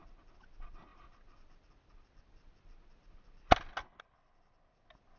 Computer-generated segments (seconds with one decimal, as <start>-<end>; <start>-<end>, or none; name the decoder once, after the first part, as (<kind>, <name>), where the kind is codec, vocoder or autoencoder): none